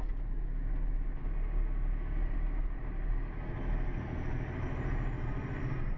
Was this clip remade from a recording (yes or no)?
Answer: no